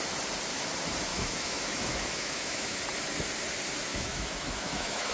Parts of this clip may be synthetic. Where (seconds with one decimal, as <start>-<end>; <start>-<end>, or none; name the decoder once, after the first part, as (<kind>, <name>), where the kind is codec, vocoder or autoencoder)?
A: 1.1-2.8 (autoencoder, DAC-VAE); 3.9-5.1

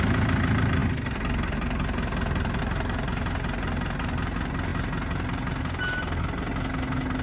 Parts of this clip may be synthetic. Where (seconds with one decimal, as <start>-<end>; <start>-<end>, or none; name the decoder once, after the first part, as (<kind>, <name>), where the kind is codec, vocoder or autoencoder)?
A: none

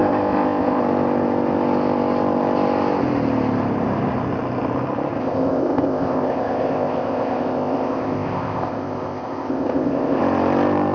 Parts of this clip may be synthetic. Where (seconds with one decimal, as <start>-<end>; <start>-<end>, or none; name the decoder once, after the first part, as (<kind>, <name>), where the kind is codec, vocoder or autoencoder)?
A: 0.0-0.8 (codec, ZipCodec); 5.2-10.2

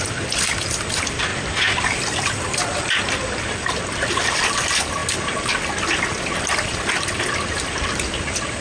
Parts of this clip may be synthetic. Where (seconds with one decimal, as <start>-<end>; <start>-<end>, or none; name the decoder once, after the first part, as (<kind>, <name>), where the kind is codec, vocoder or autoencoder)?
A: 0.0-1.3 (vocoder, BigVGAN v2); 4.1-5.0; 6.5-8.6

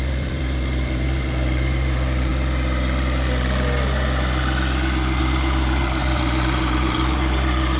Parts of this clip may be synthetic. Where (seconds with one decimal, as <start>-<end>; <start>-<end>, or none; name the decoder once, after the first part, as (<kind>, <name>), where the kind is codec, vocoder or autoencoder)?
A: 0.0-2.3 (vocoder, BigVGAN v2); 5.2-7.8

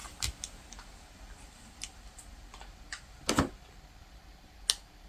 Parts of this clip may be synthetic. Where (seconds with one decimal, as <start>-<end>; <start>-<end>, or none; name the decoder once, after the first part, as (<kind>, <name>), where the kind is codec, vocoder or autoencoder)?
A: none

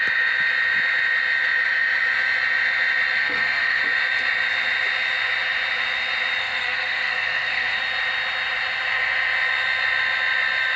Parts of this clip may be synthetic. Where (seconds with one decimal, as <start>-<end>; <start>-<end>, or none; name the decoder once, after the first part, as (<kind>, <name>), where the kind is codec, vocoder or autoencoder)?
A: 3.2-3.8 (codec, SNAC); 6.4-7.8